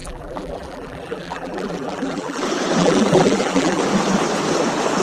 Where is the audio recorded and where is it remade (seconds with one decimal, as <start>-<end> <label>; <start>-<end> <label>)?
0.0-2.4 remade; 2.4-2.8 recorded; 2.8-3.8 remade; 3.8-5.0 recorded